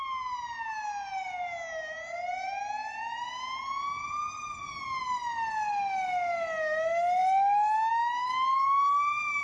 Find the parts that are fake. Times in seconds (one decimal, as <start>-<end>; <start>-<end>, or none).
none